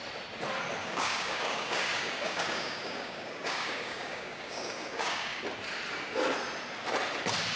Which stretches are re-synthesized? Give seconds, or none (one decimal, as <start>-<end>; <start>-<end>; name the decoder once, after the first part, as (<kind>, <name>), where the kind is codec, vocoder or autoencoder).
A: 0.8-5.4 (codec, DAC)